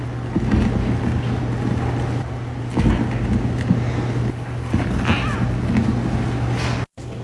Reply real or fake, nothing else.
real